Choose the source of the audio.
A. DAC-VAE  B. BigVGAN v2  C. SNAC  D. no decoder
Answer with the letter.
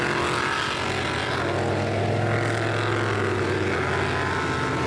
D